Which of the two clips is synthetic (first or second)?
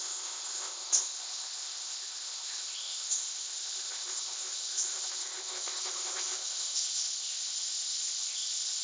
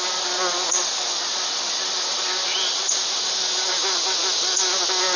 first